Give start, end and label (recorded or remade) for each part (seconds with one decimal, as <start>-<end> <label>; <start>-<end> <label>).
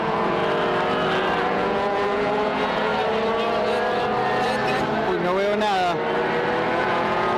0.0-0.4 remade; 0.4-1.4 recorded; 1.4-2.9 remade; 2.9-6.7 recorded; 6.7-7.4 remade